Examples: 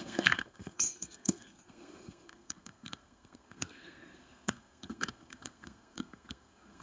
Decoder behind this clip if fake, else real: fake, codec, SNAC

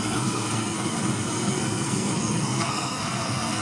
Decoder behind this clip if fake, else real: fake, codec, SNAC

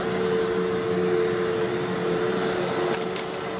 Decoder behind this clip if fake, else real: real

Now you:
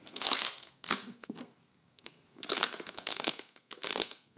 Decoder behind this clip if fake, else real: fake, codec, SNAC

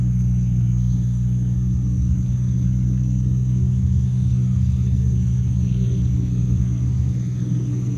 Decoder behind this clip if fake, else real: fake, codec, SNAC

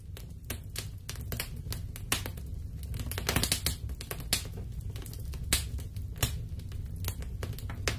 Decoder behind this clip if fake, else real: real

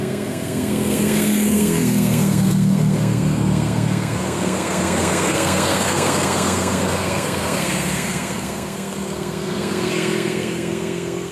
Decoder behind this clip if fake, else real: fake, codec, SNAC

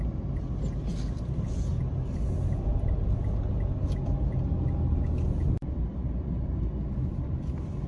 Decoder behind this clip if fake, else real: real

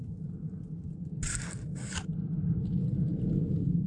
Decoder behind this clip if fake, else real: real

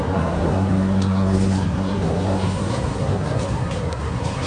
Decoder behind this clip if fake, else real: fake, codec, SNAC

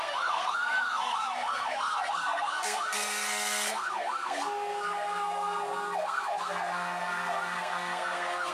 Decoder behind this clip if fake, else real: fake, codec, SNAC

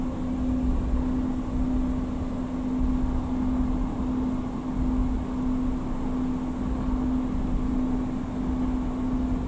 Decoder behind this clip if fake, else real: real